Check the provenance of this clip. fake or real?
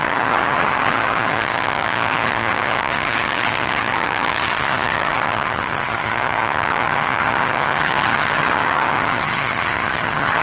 fake